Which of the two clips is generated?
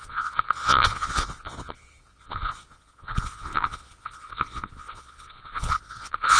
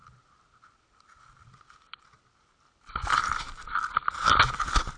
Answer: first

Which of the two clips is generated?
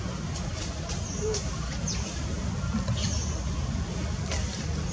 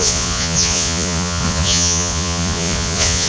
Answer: second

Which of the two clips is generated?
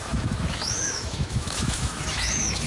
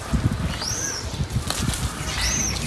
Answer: first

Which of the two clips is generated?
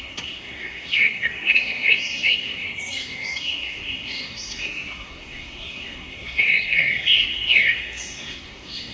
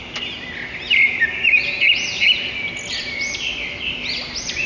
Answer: first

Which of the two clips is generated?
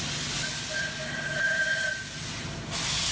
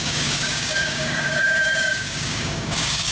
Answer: second